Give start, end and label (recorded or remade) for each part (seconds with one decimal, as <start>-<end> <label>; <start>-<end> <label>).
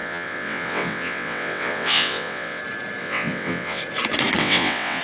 0.0-2.6 remade; 2.6-3.0 recorded; 3.0-3.8 remade; 3.8-4.4 recorded; 4.4-5.0 remade